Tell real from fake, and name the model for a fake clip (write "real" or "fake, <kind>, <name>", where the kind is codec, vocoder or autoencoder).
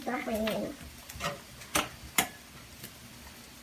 real